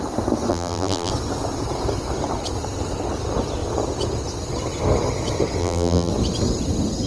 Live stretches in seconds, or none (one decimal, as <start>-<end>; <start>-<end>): 0.0-0.5; 1.1-5.6; 6.1-7.1